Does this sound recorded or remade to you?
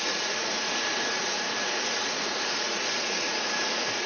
remade